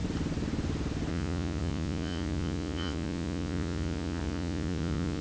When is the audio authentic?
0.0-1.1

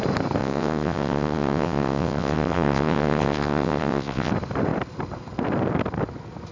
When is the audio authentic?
0.0-0.4; 4.3-6.5

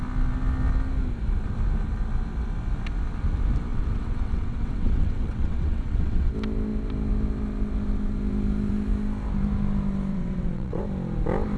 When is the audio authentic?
0.0-3.7; 6.3-10.1; 10.8-11.6

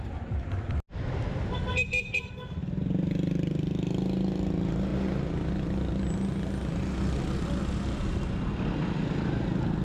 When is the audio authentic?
0.0-9.8

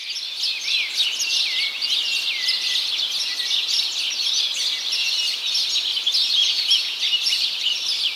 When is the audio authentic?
0.0-6.4; 7.0-8.2

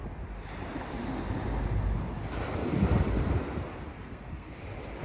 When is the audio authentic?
0.0-3.9; 4.6-5.0

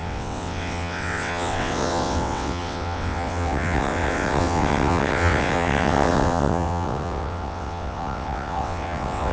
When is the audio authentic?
none